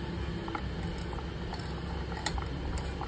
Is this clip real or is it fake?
real